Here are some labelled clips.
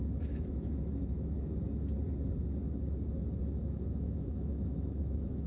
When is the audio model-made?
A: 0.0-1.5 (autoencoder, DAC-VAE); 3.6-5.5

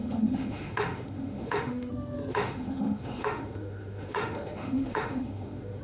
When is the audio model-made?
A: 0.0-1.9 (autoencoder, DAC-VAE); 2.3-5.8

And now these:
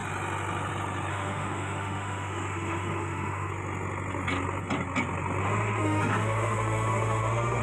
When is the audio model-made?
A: 1.1-3.5 (autoencoder, DAC-VAE); 5.4-7.6

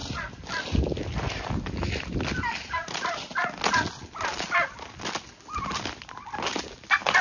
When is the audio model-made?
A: none